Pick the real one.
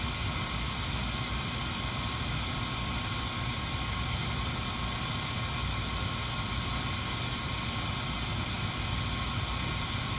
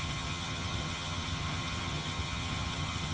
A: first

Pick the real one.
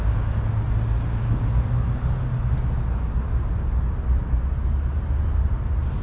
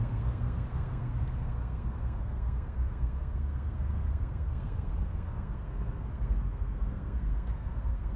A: first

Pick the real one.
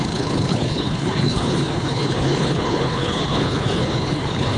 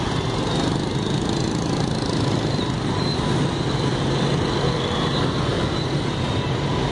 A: second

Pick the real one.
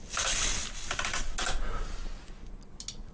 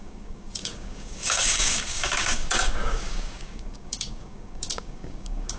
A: first